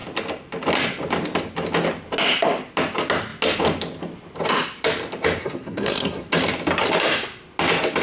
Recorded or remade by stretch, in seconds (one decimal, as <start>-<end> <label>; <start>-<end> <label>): 0.0-5.4 recorded; 5.4-6.3 remade; 6.3-8.0 recorded